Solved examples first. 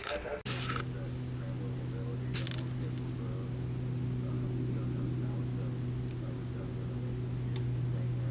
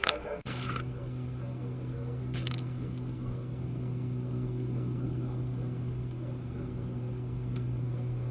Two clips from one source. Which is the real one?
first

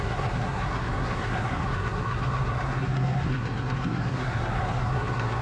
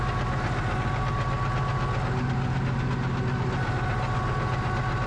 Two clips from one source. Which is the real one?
second